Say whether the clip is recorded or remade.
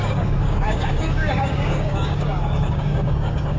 remade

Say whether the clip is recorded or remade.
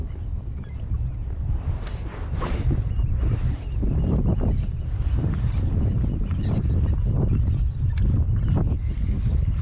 recorded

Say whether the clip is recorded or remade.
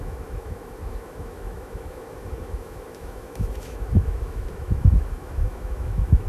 remade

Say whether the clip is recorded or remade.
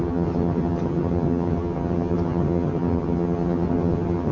remade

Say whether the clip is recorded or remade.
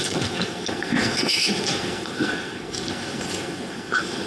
remade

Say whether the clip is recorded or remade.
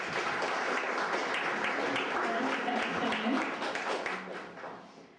recorded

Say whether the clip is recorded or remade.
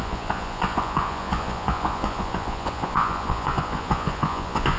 remade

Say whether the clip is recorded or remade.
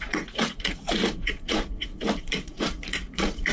remade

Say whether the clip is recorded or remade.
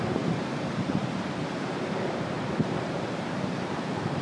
remade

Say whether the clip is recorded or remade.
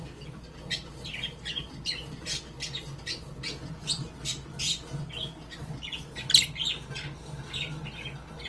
recorded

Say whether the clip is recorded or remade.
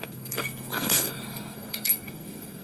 remade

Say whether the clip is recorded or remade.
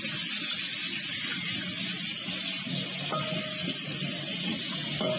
recorded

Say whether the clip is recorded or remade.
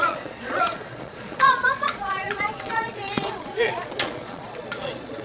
remade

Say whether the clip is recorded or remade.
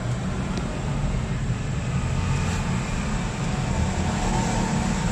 recorded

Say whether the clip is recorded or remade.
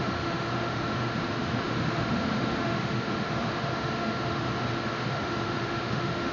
remade